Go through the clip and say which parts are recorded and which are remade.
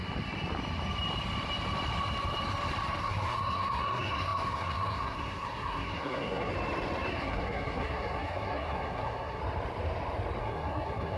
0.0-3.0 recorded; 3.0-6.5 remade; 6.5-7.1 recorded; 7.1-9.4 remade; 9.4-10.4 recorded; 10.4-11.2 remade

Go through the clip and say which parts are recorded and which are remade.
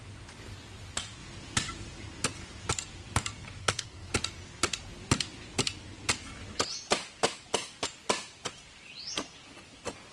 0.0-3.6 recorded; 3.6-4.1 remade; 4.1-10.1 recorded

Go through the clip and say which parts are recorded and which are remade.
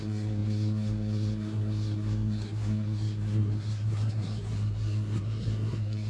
0.0-6.1 remade